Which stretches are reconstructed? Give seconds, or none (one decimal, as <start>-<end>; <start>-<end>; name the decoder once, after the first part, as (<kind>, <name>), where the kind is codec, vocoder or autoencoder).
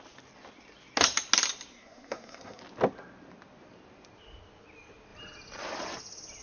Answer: 1.7-2.6 (codec, SNAC)